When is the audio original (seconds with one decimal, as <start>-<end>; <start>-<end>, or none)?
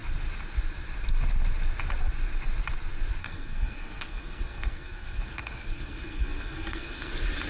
0.0-3.2; 7.1-7.5